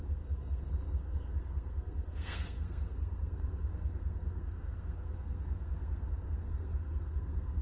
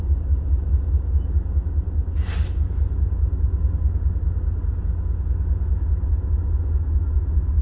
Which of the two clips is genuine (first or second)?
second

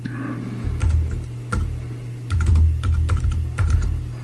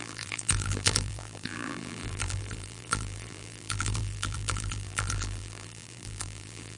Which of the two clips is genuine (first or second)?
first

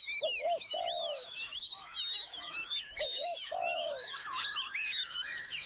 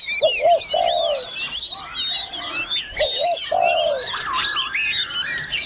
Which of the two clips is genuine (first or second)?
second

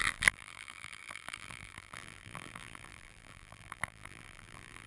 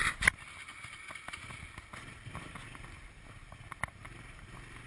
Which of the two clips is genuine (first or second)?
second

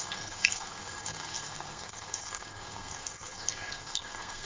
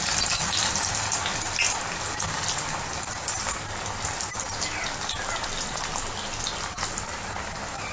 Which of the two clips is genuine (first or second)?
second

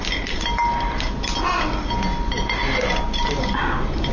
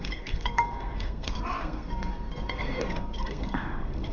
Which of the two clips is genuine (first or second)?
first